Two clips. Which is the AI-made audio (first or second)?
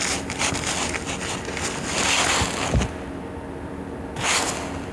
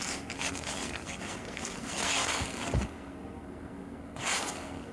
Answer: second